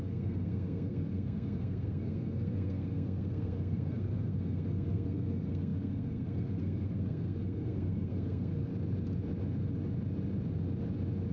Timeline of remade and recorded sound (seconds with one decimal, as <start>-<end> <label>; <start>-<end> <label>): 0.0-8.7 remade; 8.7-11.3 recorded